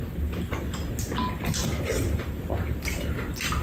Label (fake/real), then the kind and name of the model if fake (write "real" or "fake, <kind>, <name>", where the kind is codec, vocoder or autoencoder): real